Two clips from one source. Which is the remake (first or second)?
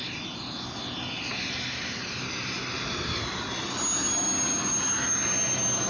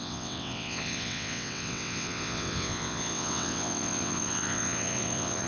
second